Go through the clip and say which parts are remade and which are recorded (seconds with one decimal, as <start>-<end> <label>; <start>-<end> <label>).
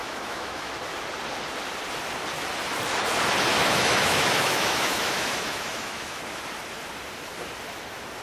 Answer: 0.0-0.7 remade; 0.7-3.5 recorded; 3.5-6.2 remade; 6.2-8.2 recorded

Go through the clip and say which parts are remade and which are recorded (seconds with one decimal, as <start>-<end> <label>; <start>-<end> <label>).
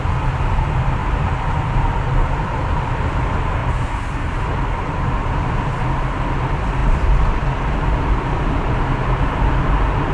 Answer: 0.0-3.6 remade; 3.6-5.0 recorded; 5.0-10.1 remade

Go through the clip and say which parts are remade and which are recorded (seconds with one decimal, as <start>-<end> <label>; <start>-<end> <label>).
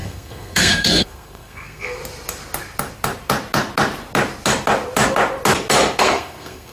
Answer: 0.0-2.0 remade; 2.0-6.0 recorded; 6.0-6.7 remade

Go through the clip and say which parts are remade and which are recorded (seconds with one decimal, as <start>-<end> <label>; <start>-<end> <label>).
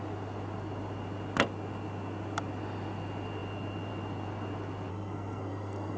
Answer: 0.0-4.9 recorded; 4.9-6.0 remade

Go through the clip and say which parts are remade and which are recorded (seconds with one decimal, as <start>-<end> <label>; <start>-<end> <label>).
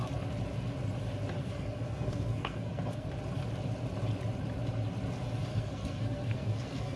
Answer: 0.0-1.4 recorded; 1.4-3.1 remade; 3.1-5.5 recorded; 5.5-7.0 remade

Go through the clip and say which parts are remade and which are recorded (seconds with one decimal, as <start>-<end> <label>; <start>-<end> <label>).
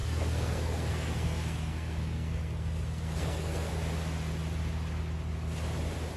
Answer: 0.0-3.7 remade; 3.7-6.2 recorded